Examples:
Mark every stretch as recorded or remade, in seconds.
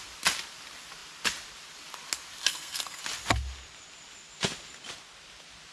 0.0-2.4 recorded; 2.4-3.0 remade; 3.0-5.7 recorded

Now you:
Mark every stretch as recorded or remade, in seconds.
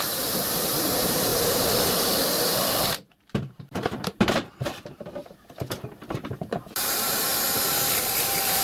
0.0-7.3 remade; 7.3-8.2 recorded; 8.2-8.6 remade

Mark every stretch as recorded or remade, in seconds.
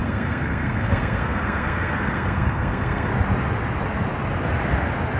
0.0-3.1 remade; 3.1-5.2 recorded